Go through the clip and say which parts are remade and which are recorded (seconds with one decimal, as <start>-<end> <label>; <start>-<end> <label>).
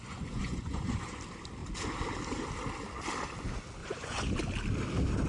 0.0-1.2 remade; 1.2-3.8 recorded; 3.8-4.4 remade; 4.4-5.3 recorded